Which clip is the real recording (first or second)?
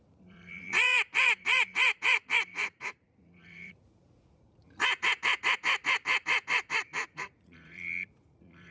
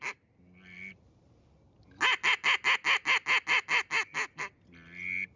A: second